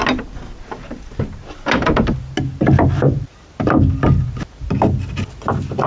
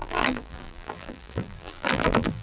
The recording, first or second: first